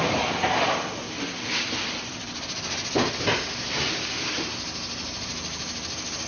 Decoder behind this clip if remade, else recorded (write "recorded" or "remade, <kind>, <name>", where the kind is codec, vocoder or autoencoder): recorded